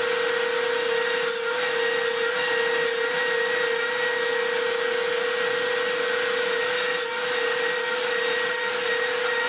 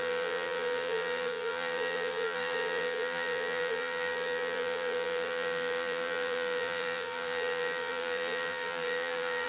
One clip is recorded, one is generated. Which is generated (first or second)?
second